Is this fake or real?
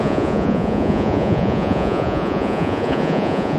fake